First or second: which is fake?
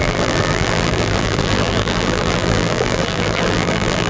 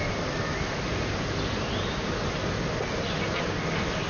first